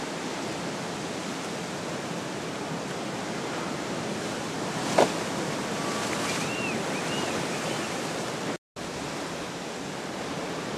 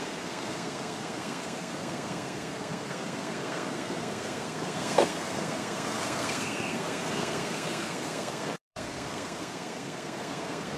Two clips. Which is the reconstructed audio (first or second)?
second